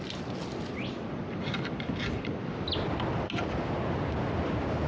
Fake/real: real